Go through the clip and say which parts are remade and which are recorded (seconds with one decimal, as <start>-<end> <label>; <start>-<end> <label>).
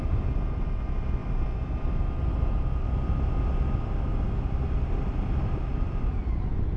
0.0-6.8 recorded